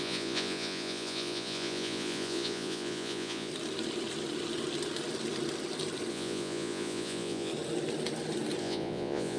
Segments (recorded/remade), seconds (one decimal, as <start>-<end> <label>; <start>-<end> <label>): 0.0-3.5 remade; 3.5-6.1 recorded; 6.1-7.5 remade; 7.5-8.6 recorded; 8.6-9.4 remade

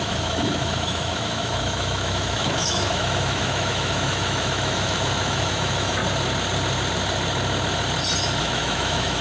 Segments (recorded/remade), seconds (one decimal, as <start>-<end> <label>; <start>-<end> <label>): 0.0-6.0 remade; 6.0-8.4 recorded; 8.4-9.2 remade